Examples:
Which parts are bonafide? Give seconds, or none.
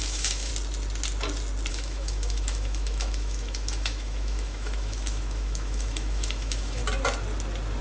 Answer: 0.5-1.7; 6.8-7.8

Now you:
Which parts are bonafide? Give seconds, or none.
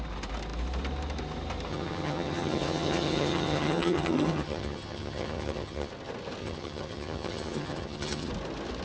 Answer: 0.0-1.7; 5.9-6.4; 8.3-8.8